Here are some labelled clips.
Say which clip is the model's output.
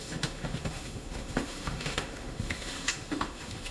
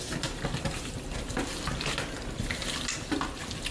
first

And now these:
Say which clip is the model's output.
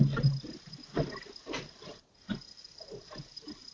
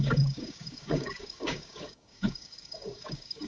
second